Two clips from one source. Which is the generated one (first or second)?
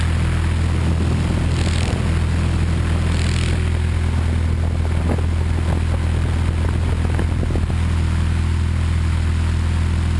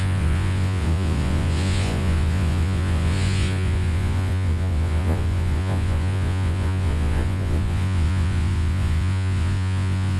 second